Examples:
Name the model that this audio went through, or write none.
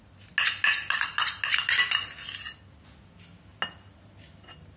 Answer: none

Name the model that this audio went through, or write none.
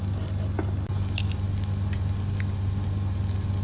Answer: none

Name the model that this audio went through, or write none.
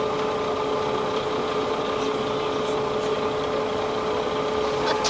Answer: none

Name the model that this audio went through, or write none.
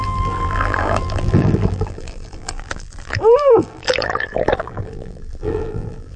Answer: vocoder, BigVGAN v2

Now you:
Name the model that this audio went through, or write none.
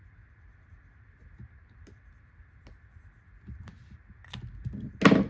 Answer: none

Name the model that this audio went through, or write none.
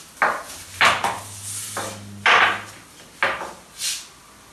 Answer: none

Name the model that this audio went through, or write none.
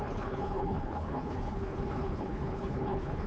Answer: codec, HILCodec